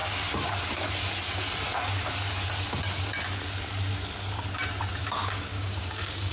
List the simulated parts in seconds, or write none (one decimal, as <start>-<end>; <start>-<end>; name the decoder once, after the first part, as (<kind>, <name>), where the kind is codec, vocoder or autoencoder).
5.0-6.3 (codec, DAC)